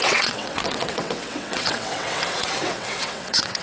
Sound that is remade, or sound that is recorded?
remade